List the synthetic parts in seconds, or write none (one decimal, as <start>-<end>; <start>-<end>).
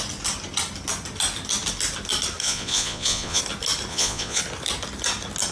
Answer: 2.4-3.4; 3.9-4.4